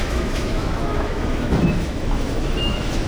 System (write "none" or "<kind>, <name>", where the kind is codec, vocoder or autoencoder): autoencoder, DAC-VAE